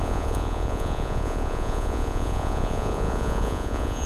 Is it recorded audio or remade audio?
remade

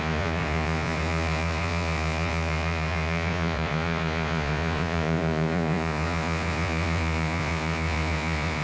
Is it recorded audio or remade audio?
remade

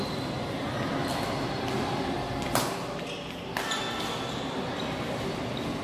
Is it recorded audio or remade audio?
recorded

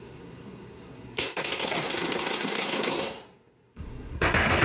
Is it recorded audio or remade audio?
remade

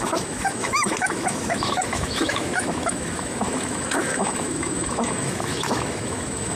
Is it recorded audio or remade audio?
remade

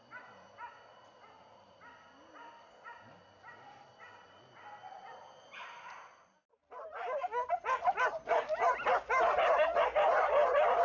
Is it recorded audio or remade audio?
recorded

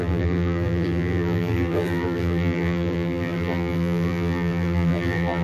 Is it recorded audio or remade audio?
remade